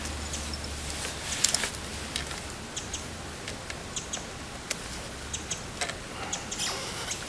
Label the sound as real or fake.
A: real